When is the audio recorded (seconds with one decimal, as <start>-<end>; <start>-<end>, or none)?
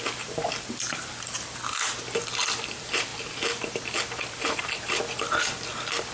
3.1-4.6